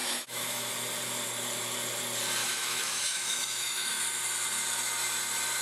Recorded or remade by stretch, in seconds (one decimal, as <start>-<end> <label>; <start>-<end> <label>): 0.0-0.7 remade; 0.7-2.4 recorded; 2.4-4.0 remade; 4.0-5.6 recorded